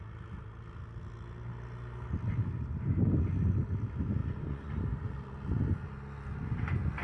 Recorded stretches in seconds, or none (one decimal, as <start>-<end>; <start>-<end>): 0.0-4.2; 4.8-7.0